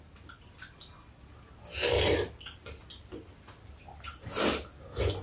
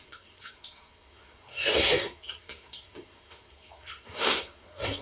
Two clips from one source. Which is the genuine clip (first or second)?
first